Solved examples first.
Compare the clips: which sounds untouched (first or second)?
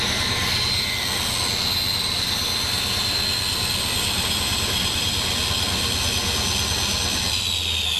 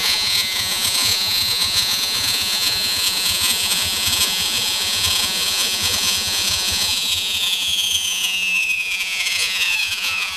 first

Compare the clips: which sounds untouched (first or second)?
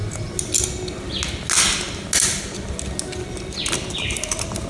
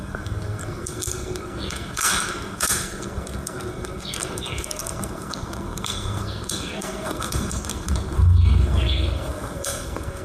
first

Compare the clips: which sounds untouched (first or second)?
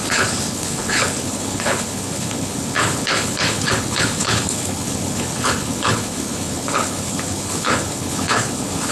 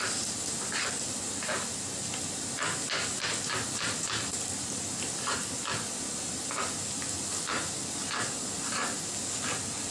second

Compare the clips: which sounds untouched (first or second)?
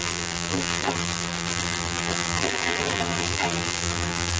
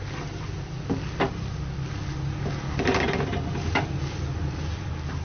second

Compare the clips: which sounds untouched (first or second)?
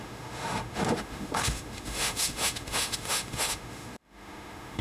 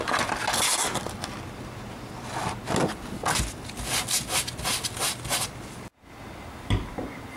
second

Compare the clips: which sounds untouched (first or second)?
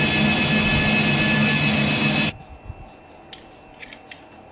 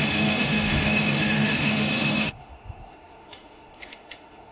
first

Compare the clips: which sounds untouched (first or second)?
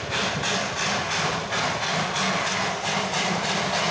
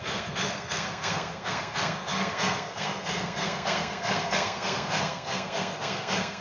first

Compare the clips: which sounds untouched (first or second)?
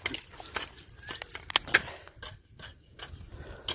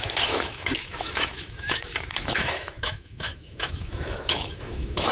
first